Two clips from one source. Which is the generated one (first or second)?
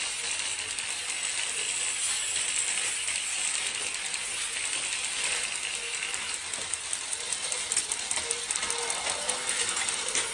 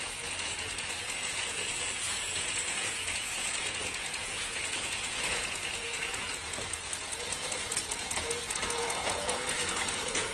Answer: second